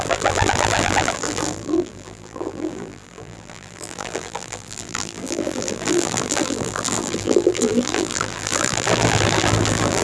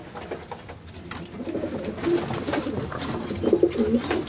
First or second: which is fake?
first